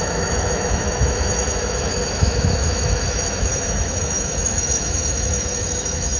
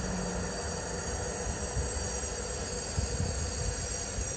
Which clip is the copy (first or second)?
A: first